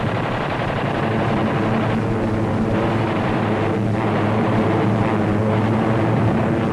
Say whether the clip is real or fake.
real